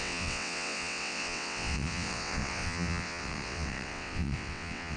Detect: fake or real fake